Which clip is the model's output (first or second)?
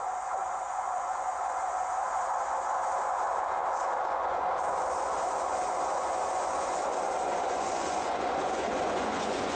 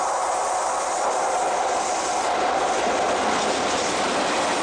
first